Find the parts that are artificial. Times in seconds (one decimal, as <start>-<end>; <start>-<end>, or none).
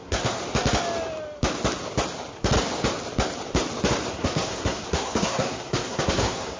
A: 0.0-0.4; 4.1-6.6